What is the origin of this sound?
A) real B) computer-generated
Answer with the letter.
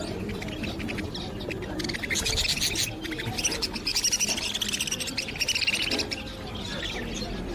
A